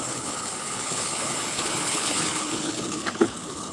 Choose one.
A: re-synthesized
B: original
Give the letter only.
A